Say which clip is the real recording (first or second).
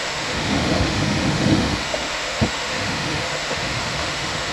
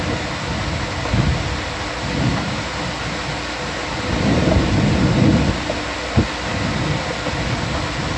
second